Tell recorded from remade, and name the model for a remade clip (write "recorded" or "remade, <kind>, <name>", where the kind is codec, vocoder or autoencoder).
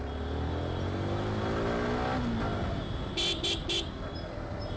recorded